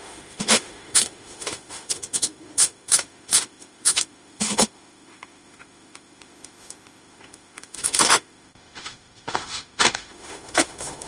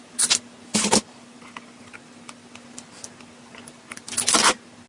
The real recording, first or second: second